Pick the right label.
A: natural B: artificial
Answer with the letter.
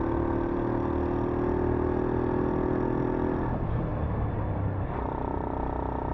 A